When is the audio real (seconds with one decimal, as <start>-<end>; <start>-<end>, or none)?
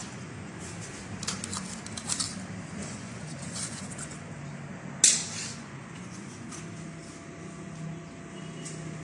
0.9-2.8; 4.3-5.4; 6.6-9.0